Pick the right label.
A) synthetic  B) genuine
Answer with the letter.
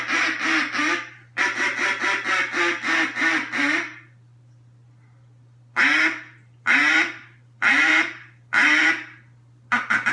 B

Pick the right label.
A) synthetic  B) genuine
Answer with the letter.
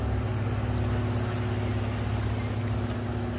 B